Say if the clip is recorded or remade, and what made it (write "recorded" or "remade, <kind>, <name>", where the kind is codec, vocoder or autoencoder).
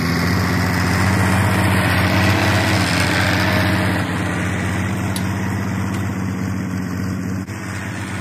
recorded